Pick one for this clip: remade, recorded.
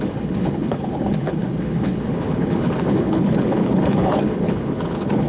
remade